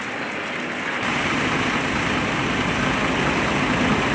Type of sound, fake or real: real